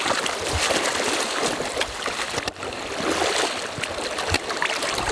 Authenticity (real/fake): real